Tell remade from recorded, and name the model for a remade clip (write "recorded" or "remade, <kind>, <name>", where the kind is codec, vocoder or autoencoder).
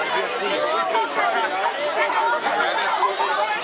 recorded